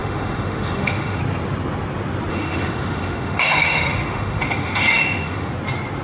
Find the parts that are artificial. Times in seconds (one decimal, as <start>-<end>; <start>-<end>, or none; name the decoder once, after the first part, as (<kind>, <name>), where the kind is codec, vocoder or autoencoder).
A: 0.0-1.2 (autoencoder, DAC-VAE); 2.3-5.5